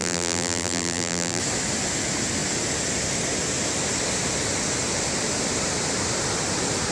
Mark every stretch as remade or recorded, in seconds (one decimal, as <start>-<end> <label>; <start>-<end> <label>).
0.0-1.4 remade; 1.4-6.9 recorded